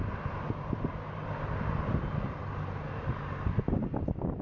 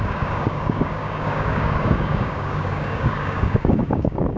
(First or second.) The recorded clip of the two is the first